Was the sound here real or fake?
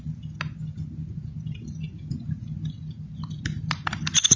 real